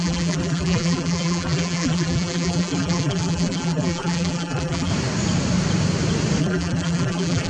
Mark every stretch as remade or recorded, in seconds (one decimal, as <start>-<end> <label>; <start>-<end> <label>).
0.0-4.9 remade; 4.9-6.4 recorded; 6.4-7.5 remade